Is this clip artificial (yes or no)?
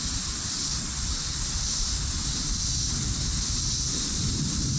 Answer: yes